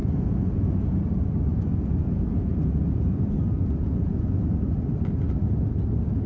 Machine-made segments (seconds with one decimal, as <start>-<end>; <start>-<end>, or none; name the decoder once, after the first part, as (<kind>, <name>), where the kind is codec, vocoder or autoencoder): 0.0-1.0 (vocoder, Vocos); 1.5-4.4